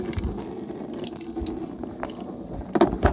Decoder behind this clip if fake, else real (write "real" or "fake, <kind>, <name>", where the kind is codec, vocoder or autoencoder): real